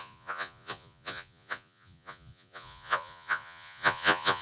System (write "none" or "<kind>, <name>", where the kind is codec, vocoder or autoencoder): vocoder, Vocos